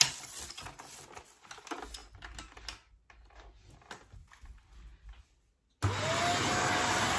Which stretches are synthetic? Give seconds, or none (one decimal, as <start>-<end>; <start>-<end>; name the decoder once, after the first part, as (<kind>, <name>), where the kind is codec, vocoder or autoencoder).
none